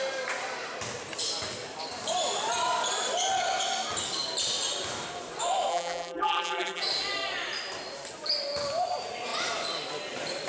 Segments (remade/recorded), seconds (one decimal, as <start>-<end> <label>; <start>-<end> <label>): 0.0-5.7 recorded; 5.7-6.8 remade; 6.8-10.5 recorded